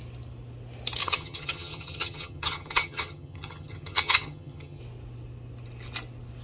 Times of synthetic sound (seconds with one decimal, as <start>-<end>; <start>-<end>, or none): 1.0-4.8